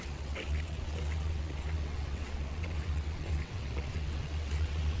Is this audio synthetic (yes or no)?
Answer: yes